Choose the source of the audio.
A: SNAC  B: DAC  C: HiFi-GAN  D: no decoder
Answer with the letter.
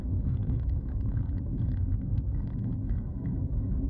A